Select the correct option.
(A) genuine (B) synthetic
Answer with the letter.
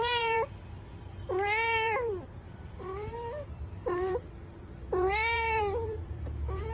B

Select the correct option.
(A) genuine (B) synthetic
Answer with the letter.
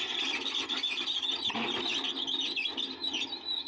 A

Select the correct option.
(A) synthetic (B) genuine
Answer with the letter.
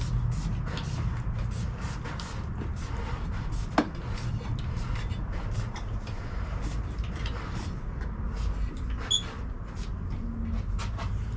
B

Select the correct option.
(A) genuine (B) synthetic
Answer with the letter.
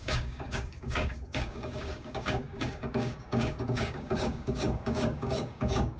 B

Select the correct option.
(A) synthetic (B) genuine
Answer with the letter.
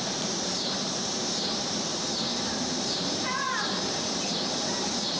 A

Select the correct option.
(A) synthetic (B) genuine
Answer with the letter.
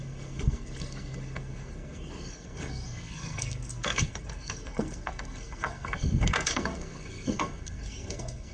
A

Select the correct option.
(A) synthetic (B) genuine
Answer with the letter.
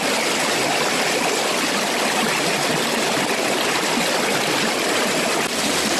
B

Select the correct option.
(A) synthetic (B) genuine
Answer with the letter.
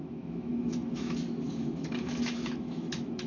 A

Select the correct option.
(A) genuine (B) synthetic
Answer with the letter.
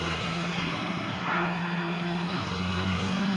B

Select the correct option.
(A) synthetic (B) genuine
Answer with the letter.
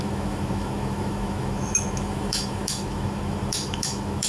A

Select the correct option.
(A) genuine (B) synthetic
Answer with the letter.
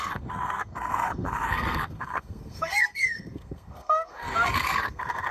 B